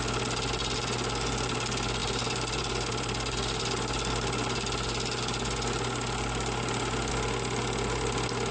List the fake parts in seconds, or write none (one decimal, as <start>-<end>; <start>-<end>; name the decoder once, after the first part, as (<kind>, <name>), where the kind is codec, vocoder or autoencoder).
2.0-7.1 (vocoder, BigVGAN v2)